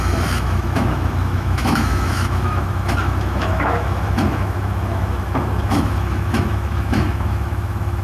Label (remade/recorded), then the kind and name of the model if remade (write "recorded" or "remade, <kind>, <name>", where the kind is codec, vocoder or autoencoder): remade, autoencoder, DAC-VAE